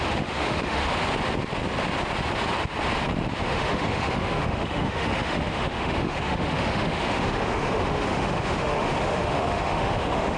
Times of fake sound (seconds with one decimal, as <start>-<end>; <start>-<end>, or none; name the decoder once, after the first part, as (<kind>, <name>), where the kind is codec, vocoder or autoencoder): 0.0-0.8 (autoencoder, DAC-VAE); 3.4-10.4